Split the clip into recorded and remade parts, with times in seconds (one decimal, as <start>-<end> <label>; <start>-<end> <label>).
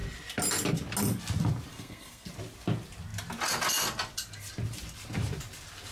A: 0.0-1.7 recorded; 1.7-2.3 remade; 2.3-5.9 recorded